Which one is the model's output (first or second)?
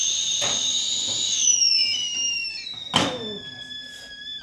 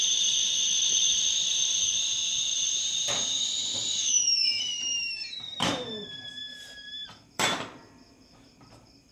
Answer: second